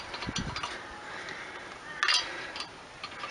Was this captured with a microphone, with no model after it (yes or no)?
yes